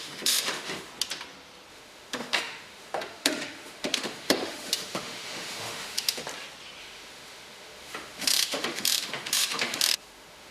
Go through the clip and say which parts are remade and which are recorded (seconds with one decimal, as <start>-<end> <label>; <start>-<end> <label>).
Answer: 0.0-0.9 remade; 0.9-1.7 recorded; 1.7-6.2 remade; 6.2-6.8 recorded; 6.8-10.5 remade